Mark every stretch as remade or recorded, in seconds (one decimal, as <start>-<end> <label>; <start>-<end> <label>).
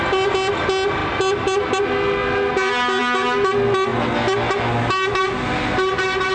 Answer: 0.0-6.3 recorded